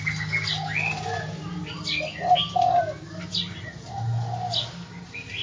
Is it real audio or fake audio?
real